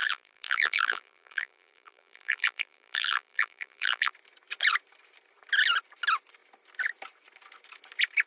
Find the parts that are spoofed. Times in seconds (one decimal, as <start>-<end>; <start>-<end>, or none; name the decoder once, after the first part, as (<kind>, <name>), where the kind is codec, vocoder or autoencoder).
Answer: 0.0-4.1 (vocoder, BigVGAN v2)